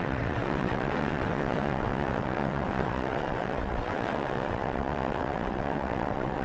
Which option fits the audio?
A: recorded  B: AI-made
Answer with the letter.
B